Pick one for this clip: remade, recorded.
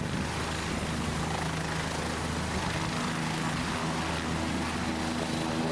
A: recorded